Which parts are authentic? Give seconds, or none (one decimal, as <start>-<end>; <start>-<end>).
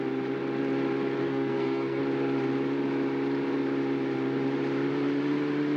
0.0-1.2; 2.0-5.8